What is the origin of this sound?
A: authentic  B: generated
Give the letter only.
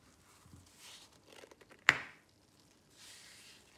A